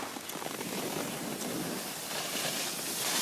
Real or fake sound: real